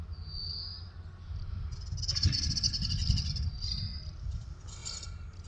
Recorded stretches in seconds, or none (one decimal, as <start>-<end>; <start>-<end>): 4.8-5.5

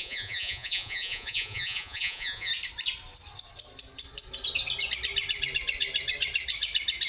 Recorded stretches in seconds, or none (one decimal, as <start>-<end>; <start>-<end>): 2.5-7.1

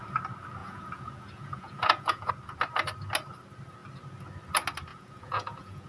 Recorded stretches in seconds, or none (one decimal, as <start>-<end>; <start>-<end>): 0.0-0.6; 2.3-4.9

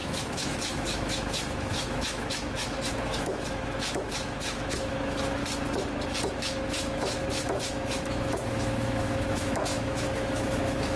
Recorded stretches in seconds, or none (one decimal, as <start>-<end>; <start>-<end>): 5.4-6.3